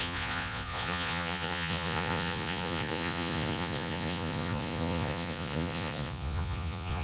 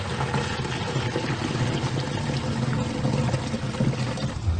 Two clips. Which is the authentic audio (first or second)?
second